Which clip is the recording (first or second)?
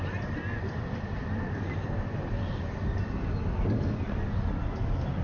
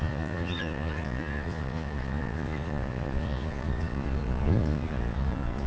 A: first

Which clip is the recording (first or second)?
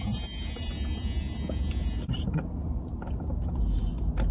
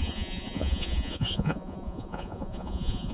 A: first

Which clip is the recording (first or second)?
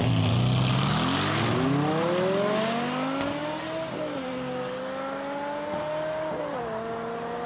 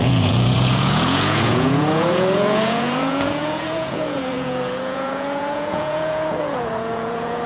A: first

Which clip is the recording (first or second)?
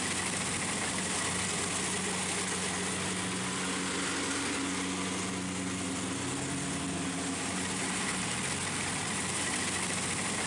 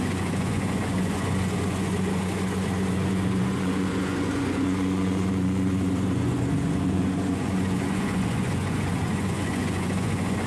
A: first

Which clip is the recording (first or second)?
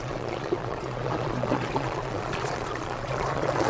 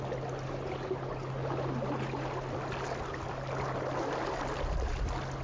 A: second